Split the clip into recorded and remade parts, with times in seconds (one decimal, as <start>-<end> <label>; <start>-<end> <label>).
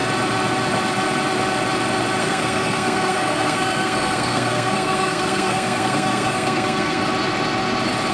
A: 0.0-2.2 recorded; 2.2-7.0 remade; 7.0-8.1 recorded